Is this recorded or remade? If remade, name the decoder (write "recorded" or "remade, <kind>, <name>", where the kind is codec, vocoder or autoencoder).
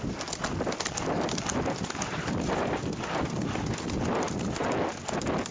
recorded